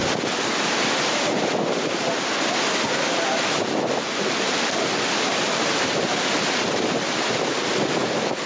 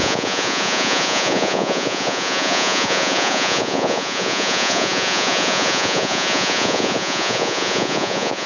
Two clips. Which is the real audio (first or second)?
first